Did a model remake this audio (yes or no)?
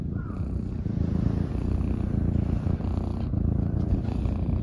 no